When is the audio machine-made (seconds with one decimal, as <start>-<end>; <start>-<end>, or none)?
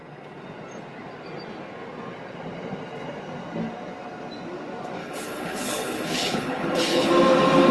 5.0-7.1